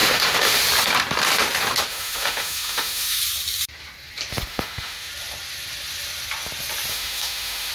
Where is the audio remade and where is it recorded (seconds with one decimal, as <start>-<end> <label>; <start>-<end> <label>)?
0.0-0.6 remade; 0.6-1.9 recorded; 1.9-3.2 remade; 3.2-4.5 recorded; 4.5-5.1 remade; 5.1-6.9 recorded; 6.9-7.7 remade